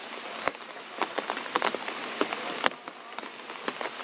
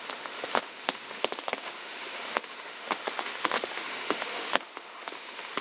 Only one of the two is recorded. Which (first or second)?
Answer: first